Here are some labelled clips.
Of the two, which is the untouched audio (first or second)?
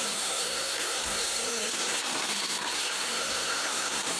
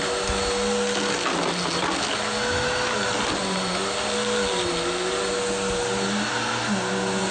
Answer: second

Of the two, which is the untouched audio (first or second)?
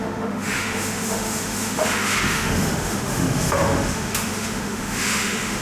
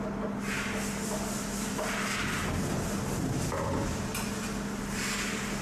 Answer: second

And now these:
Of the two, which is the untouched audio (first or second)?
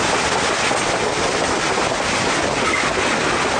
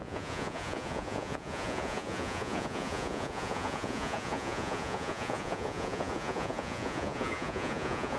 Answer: first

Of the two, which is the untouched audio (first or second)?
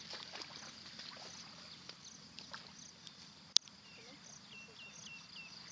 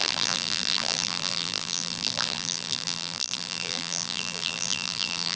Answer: first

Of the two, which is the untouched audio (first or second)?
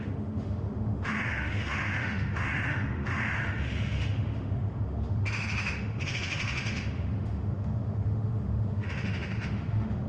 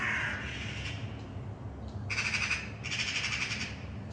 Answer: second